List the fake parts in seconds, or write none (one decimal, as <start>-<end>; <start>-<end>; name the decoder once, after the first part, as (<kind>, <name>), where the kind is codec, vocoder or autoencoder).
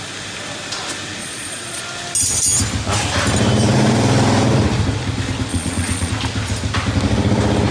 1.2-1.8 (vocoder, Vocos); 5.5-6.1